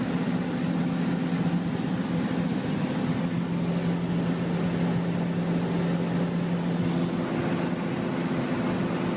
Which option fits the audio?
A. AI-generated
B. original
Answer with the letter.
B